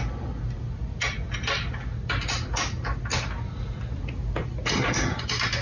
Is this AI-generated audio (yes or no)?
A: no